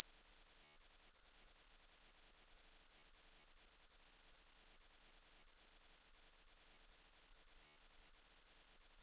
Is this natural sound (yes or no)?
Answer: no